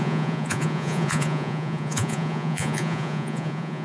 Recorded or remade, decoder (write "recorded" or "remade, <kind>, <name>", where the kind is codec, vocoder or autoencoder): remade, vocoder, Vocos